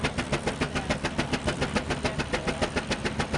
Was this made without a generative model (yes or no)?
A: yes